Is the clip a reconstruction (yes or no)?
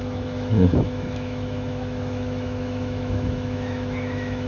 yes